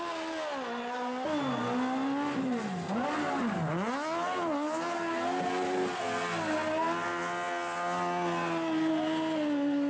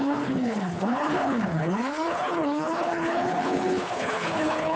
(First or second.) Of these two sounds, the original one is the first